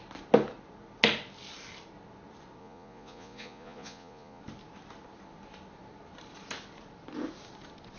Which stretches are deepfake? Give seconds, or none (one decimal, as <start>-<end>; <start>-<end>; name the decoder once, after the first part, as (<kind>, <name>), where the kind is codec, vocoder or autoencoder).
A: 2.6-4.4 (vocoder, Vocos)